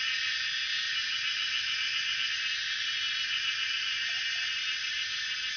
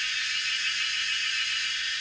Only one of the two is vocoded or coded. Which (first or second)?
second